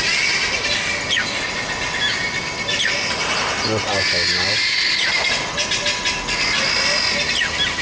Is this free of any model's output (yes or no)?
yes